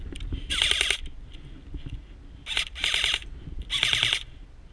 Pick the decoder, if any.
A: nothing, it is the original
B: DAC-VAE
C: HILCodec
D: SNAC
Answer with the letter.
A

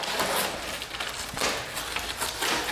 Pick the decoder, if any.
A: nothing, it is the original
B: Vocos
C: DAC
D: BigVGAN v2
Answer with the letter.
A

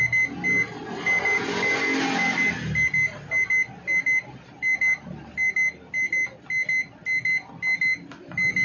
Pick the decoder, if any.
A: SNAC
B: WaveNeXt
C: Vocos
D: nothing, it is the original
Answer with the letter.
D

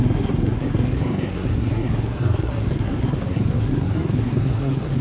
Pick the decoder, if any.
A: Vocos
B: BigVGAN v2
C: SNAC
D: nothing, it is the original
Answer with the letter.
C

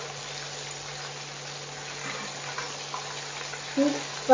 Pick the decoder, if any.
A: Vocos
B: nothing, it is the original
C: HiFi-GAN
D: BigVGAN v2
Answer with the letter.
B